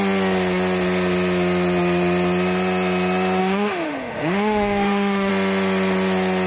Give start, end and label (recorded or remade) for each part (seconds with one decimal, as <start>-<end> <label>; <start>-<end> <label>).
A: 0.0-3.4 recorded; 3.4-5.3 remade; 5.3-6.5 recorded